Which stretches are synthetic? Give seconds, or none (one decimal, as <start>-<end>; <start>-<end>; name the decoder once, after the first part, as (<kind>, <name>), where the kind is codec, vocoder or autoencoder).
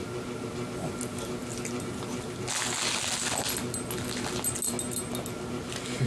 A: none